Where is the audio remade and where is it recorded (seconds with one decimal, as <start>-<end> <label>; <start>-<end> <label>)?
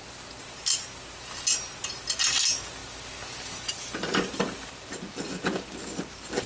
0.0-6.5 recorded